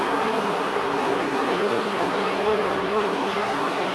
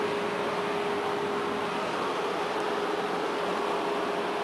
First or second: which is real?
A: second